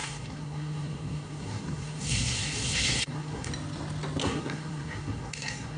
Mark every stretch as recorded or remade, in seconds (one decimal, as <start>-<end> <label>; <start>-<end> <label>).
0.0-3.5 remade; 3.5-4.2 recorded; 4.2-5.8 remade